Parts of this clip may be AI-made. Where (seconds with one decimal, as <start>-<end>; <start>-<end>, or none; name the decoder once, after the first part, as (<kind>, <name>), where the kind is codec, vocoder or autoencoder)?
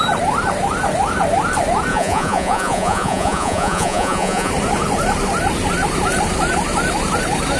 1.9-4.5 (vocoder, Vocos)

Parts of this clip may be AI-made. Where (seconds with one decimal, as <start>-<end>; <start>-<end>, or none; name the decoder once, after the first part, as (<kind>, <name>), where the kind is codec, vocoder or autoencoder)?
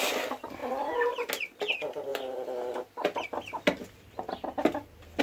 0.6-1.1 (vocoder, BigVGAN v2)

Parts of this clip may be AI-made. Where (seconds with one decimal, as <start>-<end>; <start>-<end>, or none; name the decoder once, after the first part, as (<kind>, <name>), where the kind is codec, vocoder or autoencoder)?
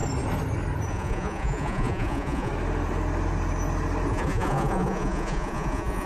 0.9-2.5 (vocoder, Vocos); 4.1-6.1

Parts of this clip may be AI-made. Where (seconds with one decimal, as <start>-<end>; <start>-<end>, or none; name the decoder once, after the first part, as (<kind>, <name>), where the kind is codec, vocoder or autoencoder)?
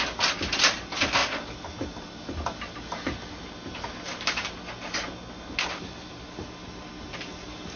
none